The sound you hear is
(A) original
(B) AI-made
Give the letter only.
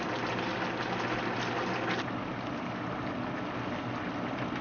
A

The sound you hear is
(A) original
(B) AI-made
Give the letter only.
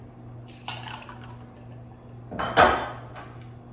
A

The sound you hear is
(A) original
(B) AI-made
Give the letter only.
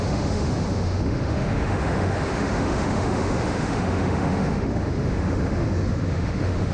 B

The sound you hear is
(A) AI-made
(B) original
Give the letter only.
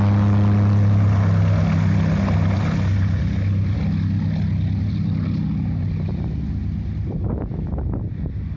B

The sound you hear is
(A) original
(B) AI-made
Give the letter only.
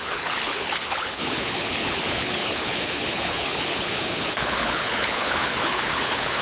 B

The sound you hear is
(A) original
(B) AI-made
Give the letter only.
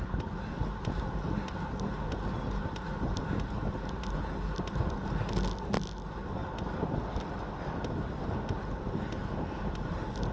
A